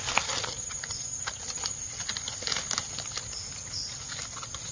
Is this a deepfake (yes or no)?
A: no